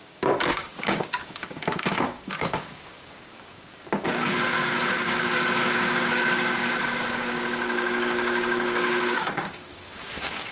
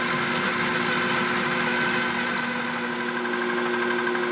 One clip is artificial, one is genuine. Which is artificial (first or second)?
first